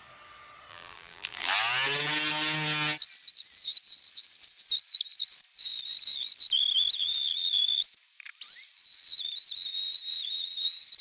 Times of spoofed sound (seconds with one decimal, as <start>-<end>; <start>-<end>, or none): 0.7-1.5